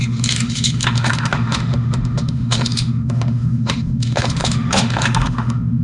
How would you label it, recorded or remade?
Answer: remade